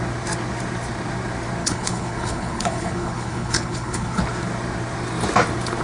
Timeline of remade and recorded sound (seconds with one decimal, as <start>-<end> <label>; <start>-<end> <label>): 0.0-1.6 recorded; 1.6-4.2 remade; 4.2-5.8 recorded